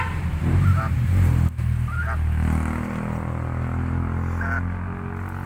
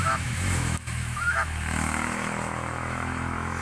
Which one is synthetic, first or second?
second